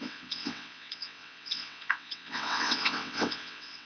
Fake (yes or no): yes